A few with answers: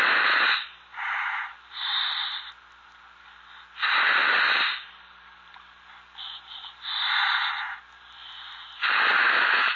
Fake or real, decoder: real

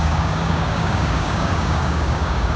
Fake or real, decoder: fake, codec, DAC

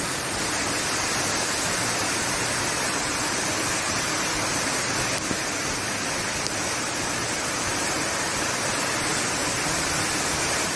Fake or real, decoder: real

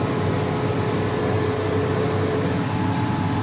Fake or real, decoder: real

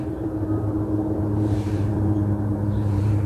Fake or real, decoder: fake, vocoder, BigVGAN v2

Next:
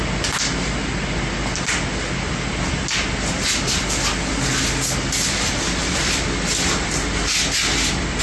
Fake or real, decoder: real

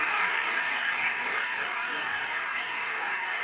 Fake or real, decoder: fake, codec, DAC